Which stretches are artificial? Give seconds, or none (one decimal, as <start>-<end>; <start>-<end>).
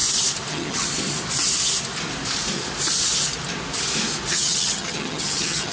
0.5-0.9; 4.3-5.7